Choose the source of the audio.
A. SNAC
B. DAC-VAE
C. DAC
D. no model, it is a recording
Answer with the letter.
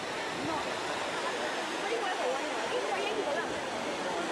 D